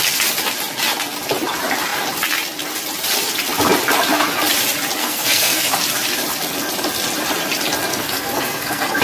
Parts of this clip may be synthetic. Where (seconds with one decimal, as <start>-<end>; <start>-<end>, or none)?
5.0-5.7; 7.9-9.0